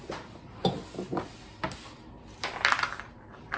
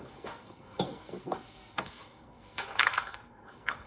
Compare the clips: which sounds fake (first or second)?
second